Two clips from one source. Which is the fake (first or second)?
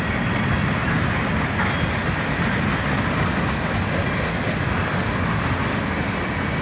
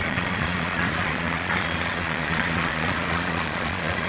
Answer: second